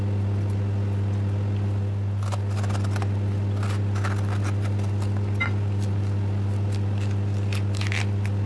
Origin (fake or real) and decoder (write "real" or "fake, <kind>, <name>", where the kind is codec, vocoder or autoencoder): real